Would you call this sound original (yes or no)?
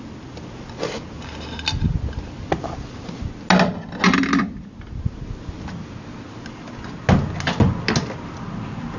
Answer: yes